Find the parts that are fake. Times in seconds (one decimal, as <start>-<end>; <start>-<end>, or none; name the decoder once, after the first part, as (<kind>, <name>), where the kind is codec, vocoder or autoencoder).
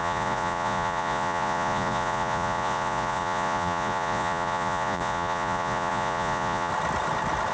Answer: 0.0-6.7 (vocoder, Vocos)